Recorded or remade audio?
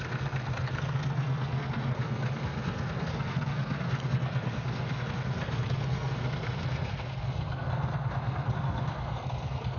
remade